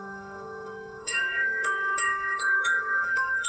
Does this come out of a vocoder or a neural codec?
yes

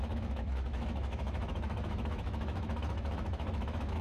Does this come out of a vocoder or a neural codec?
yes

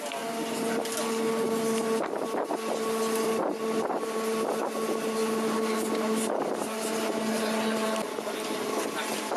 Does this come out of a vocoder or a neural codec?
no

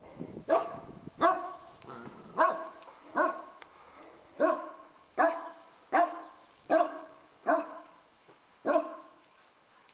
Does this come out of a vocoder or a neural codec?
yes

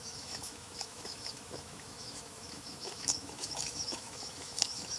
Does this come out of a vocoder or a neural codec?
yes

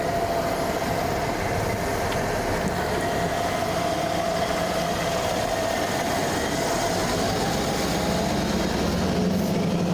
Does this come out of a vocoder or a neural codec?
no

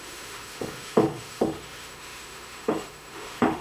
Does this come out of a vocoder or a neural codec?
yes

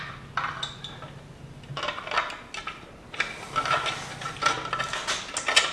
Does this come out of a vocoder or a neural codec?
no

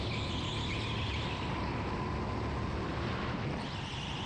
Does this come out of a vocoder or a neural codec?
no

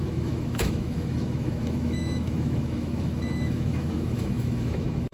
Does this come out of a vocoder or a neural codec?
yes